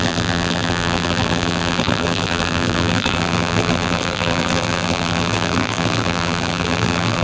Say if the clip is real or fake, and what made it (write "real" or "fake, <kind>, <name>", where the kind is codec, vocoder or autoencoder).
fake, vocoder, BigVGAN v2